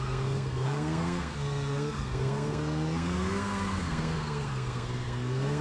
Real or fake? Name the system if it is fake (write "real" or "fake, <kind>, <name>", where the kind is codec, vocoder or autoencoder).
fake, codec, SNAC